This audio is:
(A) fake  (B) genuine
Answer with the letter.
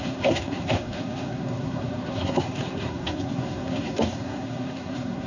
A